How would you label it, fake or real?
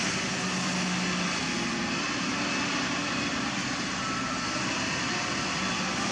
real